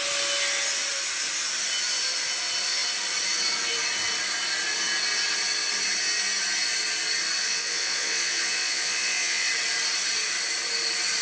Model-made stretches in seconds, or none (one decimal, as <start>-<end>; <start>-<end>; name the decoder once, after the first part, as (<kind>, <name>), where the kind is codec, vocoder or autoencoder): 7.4-9.5 (vocoder, Vocos)